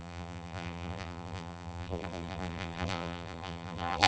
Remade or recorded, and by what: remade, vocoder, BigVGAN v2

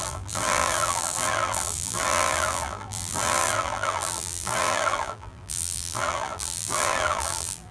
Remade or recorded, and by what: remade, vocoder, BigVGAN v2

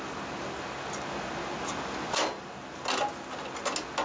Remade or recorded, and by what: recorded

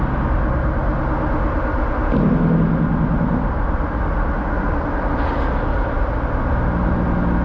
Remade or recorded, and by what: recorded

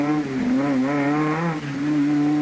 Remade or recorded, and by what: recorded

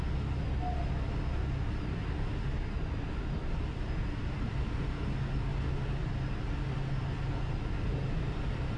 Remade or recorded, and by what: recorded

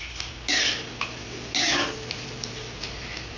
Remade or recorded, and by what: recorded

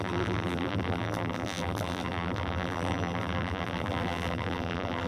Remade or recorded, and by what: remade, vocoder, BigVGAN v2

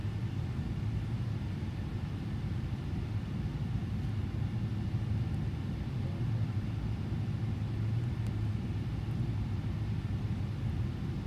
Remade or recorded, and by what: recorded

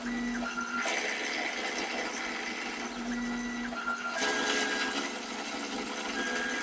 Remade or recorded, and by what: recorded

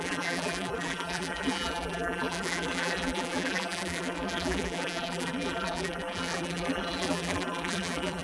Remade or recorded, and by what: remade, vocoder, BigVGAN v2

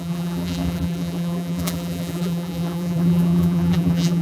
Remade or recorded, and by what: remade, vocoder, BigVGAN v2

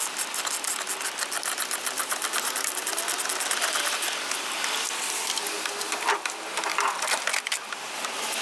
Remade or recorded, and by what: recorded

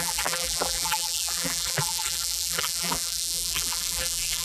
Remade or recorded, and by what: remade, vocoder, BigVGAN v2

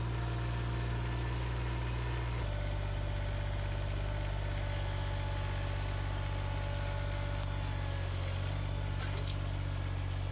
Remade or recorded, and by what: recorded